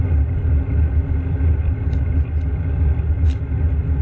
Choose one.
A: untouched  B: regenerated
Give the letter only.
A